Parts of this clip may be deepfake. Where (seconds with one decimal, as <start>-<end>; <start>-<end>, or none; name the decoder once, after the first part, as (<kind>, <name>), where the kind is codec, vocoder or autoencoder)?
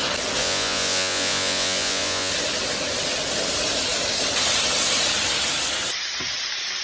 0.4-2.3 (vocoder, Vocos)